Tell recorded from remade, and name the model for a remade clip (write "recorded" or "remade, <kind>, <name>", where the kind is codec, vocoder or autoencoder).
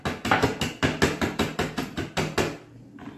recorded